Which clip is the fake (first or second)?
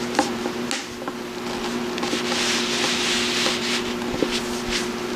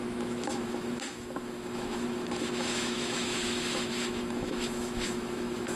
second